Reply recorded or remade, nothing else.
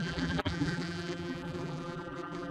remade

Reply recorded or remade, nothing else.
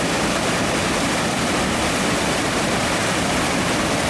remade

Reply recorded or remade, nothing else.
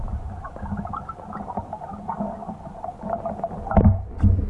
recorded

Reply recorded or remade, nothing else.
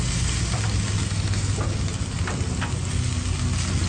recorded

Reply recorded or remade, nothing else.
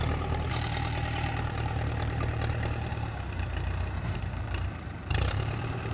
remade